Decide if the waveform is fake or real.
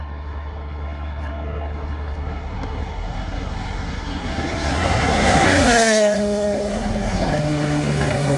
fake